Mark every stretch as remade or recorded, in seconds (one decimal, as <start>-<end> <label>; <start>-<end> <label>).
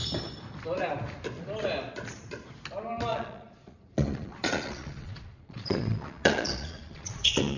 0.0-3.1 recorded; 3.1-7.6 remade